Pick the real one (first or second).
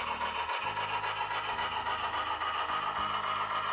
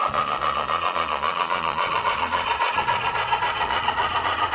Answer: first